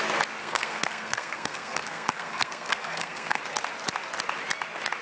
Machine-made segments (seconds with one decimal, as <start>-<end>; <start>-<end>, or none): 0.4-3.4